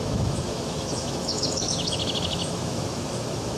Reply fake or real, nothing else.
fake